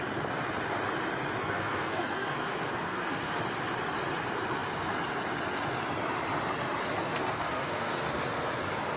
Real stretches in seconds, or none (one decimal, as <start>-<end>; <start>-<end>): 0.0-1.4; 3.4-7.0; 8.5-9.0